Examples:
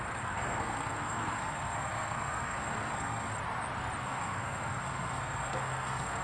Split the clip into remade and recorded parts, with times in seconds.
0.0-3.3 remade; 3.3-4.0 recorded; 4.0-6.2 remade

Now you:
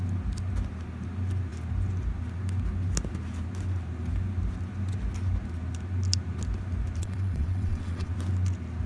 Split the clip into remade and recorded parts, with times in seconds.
0.0-7.0 recorded; 7.0-8.1 remade; 8.1-8.9 recorded

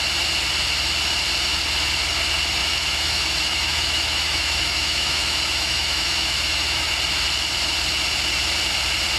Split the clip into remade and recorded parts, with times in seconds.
0.0-2.6 recorded; 2.6-6.9 remade; 6.9-9.2 recorded